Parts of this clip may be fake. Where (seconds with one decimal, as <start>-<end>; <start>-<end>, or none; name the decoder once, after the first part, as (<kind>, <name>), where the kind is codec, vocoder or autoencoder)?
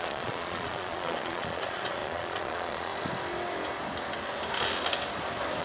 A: 0.0-2.9 (vocoder, Vocos)